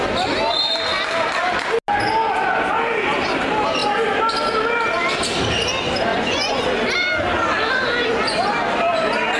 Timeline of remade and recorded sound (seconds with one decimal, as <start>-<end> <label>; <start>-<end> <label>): 0.0-6.1 recorded; 6.1-6.6 remade; 6.6-9.4 recorded